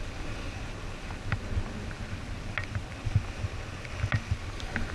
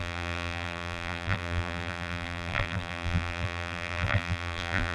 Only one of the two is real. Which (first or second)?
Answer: first